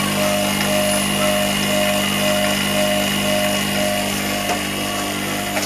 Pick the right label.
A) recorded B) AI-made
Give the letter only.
A